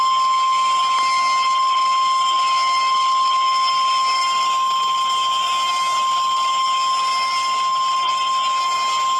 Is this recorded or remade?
recorded